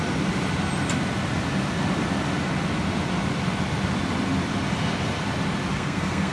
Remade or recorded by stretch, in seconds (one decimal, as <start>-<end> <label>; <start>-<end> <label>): 0.0-5.7 recorded; 5.7-6.3 remade